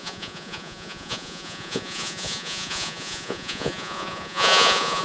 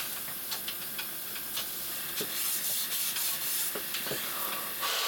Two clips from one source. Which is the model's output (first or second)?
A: first